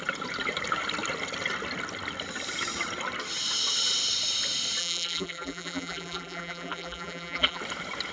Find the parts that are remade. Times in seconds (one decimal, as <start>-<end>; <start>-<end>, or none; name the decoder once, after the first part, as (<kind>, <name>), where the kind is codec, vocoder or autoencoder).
4.8-7.6 (vocoder, BigVGAN v2)